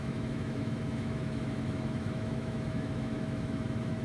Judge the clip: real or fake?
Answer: fake